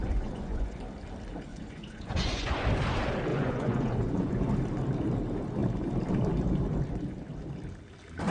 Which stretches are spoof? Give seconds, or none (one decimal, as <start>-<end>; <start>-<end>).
0.0-0.8; 1.5-2.5; 3.3-4.5